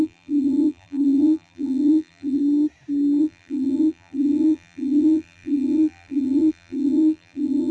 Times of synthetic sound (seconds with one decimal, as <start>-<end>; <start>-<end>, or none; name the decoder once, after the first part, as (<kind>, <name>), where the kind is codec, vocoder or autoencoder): 0.0-2.4 (vocoder, BigVGAN v2); 3.2-7.7